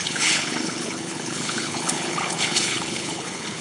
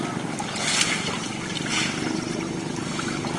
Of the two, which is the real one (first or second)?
second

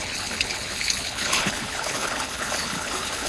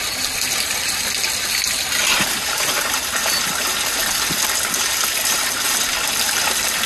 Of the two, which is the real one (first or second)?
second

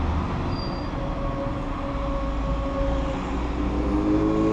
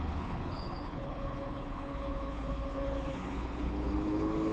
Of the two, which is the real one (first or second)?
first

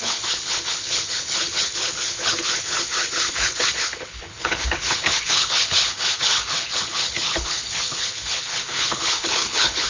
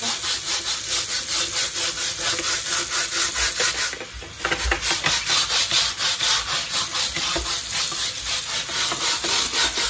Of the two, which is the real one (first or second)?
second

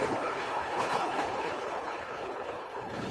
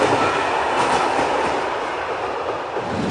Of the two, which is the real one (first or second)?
second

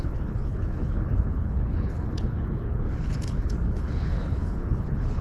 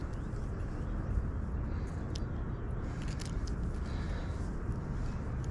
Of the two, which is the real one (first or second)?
second